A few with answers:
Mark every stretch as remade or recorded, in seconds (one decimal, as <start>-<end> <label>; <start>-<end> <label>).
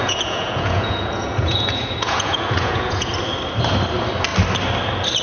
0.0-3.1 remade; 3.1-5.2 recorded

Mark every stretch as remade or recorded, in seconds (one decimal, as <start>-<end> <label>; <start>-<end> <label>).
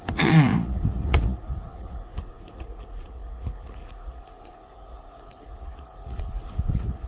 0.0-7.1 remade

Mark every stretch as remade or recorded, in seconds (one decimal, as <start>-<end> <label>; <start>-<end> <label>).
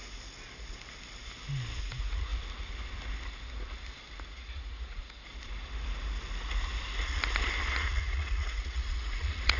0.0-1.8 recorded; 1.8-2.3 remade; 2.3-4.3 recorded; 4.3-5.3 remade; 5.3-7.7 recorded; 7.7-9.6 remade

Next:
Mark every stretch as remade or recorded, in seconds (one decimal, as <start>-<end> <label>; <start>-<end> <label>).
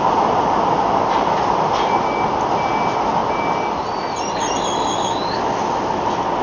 0.0-6.4 recorded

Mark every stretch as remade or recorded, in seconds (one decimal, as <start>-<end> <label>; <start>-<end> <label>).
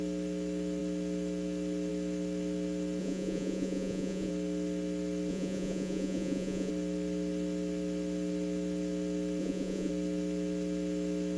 0.0-3.0 recorded; 3.0-4.3 remade; 4.3-5.3 recorded; 5.3-6.7 remade; 6.7-9.4 recorded; 9.4-9.9 remade; 9.9-11.4 recorded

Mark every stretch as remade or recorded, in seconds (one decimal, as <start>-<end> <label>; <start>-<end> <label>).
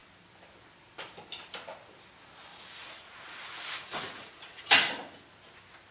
0.0-2.5 recorded; 2.5-4.6 remade; 4.6-5.9 recorded